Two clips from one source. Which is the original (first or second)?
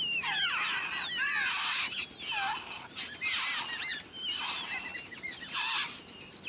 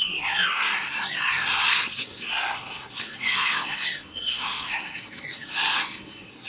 first